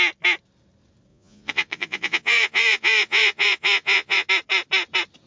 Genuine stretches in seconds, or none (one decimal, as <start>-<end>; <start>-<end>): 0.0-1.1; 4.3-5.3